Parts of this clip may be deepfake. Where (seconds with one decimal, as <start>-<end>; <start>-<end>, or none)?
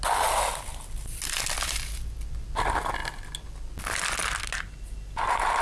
none